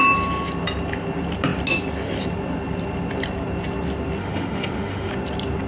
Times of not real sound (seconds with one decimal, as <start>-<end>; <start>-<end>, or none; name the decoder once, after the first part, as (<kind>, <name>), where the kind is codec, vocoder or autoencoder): 4.2-5.1 (autoencoder, DAC-VAE)